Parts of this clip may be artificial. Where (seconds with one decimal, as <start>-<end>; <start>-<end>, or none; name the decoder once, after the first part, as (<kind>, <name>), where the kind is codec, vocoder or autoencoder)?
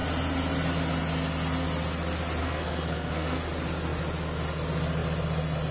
2.4-3.4 (codec, SNAC)